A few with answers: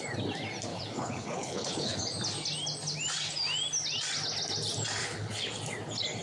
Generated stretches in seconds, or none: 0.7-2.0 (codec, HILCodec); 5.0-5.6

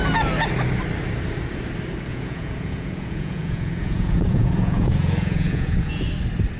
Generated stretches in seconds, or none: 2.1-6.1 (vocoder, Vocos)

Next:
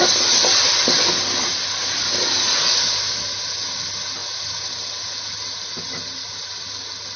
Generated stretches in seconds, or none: none